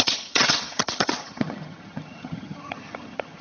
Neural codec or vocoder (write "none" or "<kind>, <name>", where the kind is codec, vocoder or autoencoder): vocoder, HiFi-GAN